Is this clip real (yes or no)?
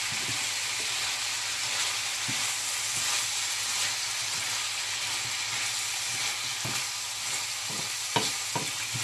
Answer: yes